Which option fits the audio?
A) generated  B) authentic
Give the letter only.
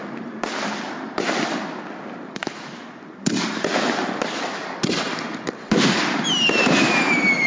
A